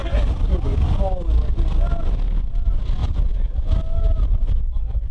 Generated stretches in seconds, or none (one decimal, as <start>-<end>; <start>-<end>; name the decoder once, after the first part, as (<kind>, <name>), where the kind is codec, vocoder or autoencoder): 3.0-3.8 (vocoder, BigVGAN v2)